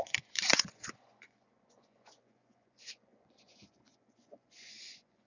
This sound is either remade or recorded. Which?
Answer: remade